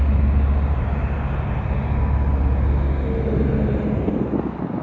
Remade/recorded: recorded